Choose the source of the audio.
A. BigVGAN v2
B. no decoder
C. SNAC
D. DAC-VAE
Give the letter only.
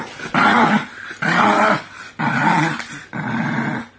A